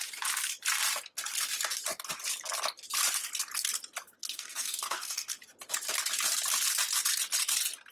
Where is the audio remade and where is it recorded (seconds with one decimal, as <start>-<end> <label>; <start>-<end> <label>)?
0.0-4.2 recorded; 4.2-5.4 remade; 5.4-7.9 recorded